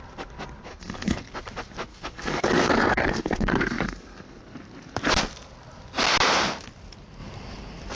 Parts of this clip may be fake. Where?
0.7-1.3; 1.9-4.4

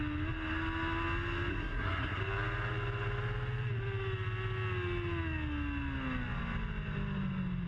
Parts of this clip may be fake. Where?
1.5-2.2